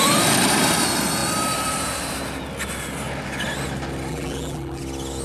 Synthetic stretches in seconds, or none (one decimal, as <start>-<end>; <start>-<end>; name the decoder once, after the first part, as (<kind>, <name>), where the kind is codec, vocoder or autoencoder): 4.1-4.8 (vocoder, BigVGAN v2)